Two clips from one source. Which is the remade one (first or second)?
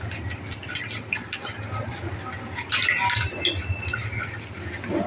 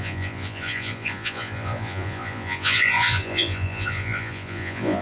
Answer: second